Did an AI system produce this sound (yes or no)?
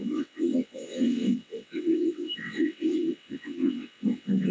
yes